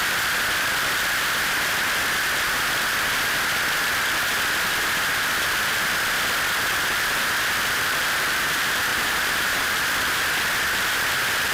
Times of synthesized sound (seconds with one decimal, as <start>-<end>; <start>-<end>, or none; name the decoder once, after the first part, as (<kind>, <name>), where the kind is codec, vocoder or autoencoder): 8.9-9.7 (vocoder, BigVGAN v2)